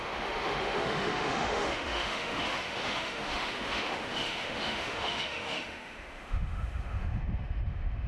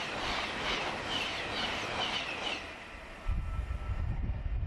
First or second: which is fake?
first